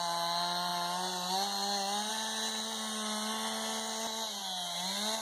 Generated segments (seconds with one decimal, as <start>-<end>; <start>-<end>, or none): none